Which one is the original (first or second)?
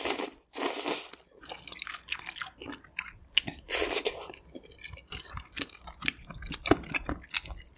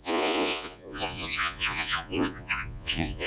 first